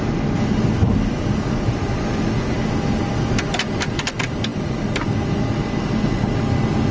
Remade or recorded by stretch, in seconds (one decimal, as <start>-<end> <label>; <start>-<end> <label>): 0.0-6.9 recorded